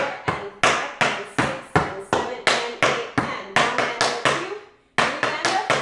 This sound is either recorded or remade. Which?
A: recorded